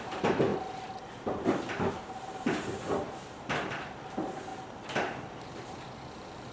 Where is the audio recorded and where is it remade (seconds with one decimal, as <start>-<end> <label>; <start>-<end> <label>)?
0.0-6.5 remade